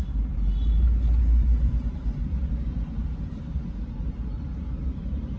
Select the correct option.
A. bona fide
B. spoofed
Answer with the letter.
B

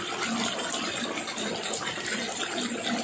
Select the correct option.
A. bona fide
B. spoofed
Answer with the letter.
A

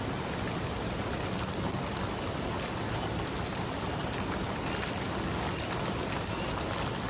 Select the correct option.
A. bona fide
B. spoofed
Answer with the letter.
A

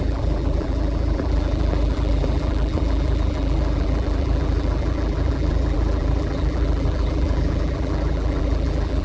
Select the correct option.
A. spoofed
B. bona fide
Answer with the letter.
A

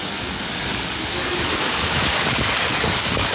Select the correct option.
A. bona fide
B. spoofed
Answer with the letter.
B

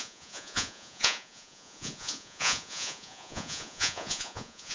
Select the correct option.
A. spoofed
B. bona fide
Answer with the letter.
A